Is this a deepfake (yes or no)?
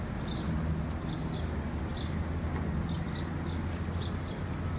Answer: no